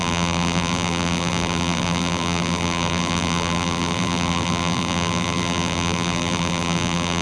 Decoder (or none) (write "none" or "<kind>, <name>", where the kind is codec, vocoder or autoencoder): vocoder, BigVGAN v2